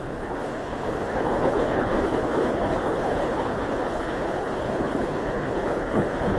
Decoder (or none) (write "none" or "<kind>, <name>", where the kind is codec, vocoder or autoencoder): codec, HILCodec